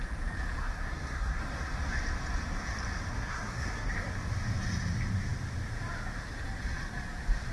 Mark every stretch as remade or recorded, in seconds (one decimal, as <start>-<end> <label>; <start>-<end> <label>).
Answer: 0.0-0.6 recorded; 0.6-1.4 remade; 1.4-3.1 recorded; 3.1-3.9 remade; 3.9-7.5 recorded